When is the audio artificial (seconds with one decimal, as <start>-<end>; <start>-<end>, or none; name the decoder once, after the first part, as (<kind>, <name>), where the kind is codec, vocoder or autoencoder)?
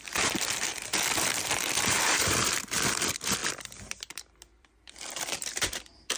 0.0-3.4 (vocoder, BigVGAN v2); 4.6-6.2